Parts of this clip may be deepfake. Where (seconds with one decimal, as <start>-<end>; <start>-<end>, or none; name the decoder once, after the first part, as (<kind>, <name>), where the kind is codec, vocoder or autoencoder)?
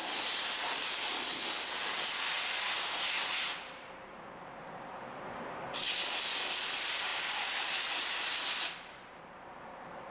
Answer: 0.0-5.2 (vocoder, BigVGAN v2); 7.1-9.2